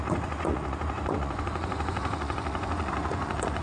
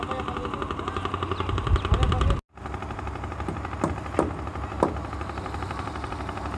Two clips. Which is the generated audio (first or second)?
first